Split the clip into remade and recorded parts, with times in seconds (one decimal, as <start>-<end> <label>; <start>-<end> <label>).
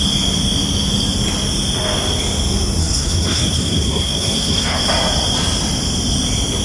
0.0-2.8 recorded; 2.8-4.8 remade; 4.8-6.6 recorded